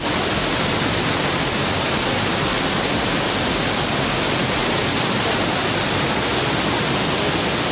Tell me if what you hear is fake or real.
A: real